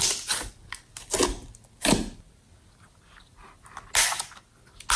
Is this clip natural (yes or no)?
yes